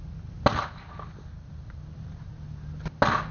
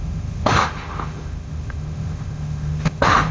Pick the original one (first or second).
first